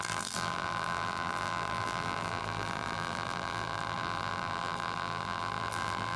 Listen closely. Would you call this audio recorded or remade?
remade